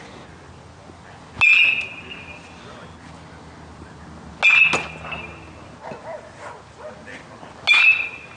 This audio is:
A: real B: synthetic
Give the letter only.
A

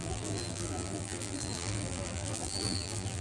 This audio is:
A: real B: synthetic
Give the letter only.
B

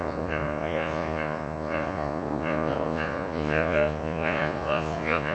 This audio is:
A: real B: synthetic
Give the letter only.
B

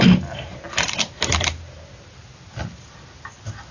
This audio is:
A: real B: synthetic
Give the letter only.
A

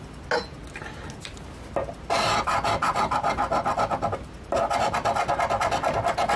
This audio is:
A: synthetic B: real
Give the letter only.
B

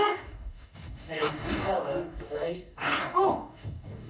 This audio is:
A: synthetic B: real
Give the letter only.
A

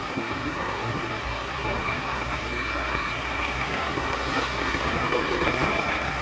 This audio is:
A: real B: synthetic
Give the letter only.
B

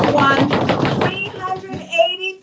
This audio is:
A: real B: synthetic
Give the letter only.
A